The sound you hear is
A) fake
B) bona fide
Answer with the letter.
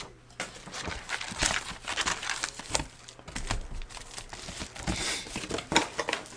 B